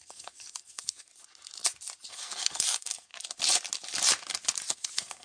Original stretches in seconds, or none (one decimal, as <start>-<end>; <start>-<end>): 1.1-2.1; 3.1-4.7